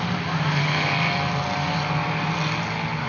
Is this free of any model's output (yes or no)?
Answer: yes